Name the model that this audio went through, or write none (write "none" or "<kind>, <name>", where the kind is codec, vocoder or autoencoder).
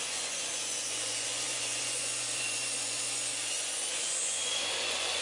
vocoder, Vocos